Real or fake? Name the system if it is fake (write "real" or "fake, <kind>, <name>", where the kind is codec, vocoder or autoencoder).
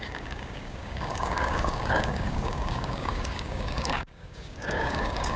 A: fake, codec, DAC